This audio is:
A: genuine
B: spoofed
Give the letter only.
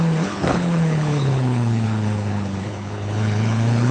B